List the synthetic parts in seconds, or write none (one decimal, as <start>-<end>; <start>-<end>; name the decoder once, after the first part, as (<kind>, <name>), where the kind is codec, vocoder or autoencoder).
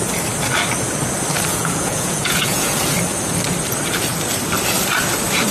1.5-2.7 (vocoder, Vocos)